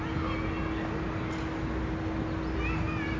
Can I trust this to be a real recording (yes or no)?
yes